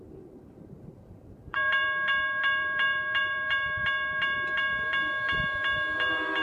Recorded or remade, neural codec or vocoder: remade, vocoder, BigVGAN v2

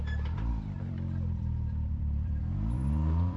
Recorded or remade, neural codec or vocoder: remade, vocoder, BigVGAN v2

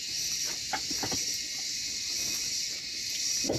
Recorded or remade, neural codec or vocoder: remade, vocoder, BigVGAN v2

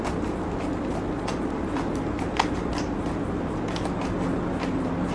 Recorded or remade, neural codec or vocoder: recorded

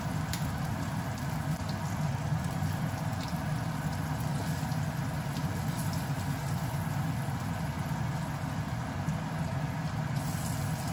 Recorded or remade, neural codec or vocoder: recorded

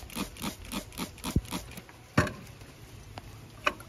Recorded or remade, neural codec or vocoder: recorded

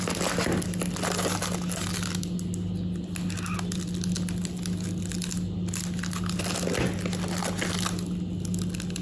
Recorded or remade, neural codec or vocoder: recorded